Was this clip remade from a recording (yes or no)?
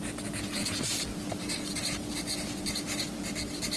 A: no